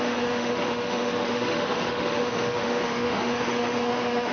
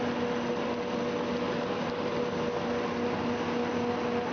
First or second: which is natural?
second